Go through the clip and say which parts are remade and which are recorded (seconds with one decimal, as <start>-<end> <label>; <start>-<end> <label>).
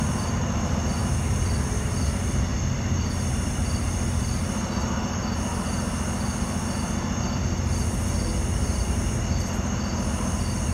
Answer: 0.0-10.7 recorded